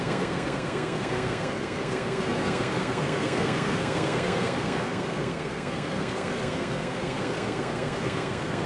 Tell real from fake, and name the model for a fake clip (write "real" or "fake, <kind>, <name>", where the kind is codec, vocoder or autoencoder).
fake, codec, SNAC